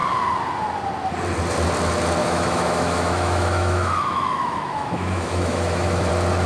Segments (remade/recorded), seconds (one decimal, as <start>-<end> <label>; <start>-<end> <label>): 0.0-2.2 recorded; 2.2-6.1 remade; 6.1-6.5 recorded